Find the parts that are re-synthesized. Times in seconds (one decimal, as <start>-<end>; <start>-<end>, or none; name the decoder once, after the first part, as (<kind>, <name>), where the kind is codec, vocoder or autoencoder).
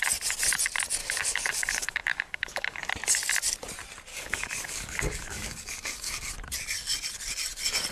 1.0-2.9 (codec, DAC); 4.1-6.3